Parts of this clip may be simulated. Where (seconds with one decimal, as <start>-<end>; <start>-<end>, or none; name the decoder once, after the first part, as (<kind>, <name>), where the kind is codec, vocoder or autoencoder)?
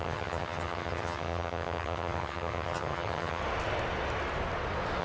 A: 0.0-3.4 (vocoder, HiFi-GAN)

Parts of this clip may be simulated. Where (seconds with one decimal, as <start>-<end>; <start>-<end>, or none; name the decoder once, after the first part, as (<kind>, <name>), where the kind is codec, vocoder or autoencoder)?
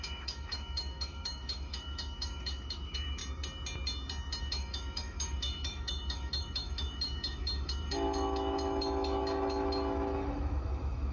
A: 0.0-3.2 (autoencoder, DAC-VAE); 4.4-11.1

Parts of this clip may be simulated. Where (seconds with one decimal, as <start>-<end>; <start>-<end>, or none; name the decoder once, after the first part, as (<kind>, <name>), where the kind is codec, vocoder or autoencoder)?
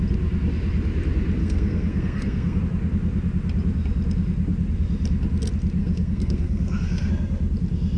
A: 1.4-2.6 (codec, SNAC); 5.8-7.1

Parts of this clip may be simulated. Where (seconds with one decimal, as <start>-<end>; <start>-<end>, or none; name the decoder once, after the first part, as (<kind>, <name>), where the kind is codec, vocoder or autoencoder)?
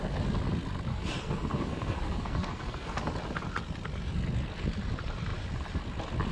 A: 0.9-3.0 (codec, SNAC)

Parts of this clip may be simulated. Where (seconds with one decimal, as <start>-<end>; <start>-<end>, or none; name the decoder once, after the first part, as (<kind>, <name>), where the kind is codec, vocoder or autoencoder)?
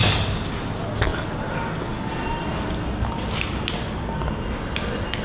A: none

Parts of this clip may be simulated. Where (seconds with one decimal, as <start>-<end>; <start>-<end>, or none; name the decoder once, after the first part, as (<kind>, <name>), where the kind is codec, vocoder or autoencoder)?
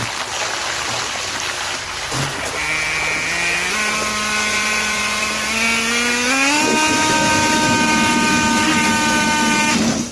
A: 4.5-5.2 (vocoder, Vocos)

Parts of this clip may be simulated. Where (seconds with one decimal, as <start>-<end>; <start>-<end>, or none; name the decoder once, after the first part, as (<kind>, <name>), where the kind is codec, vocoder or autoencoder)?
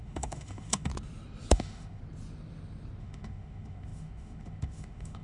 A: 0.0-0.9 (autoencoder, DAC-VAE); 1.5-2.0; 3.0-5.2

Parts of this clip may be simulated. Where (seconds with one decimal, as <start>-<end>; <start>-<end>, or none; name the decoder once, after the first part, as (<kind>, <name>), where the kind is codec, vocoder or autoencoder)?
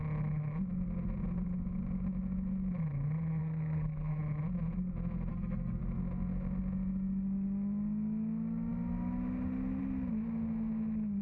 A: 3.4-4.2 (codec, SNAC); 5.3-5.8